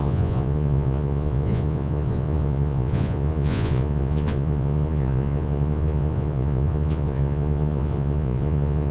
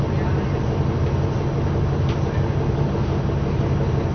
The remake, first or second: first